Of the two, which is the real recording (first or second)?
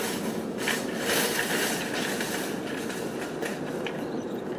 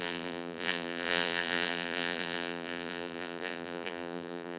first